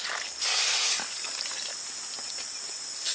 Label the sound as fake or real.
real